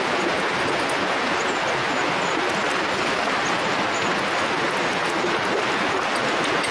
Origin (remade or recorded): recorded